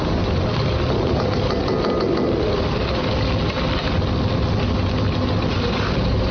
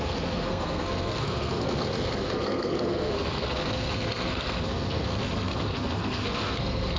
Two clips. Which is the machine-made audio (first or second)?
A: second